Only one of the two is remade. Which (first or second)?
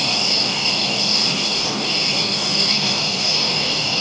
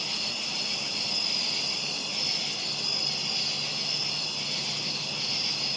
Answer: first